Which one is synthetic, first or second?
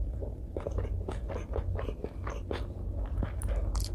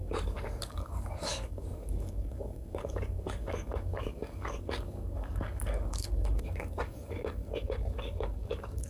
second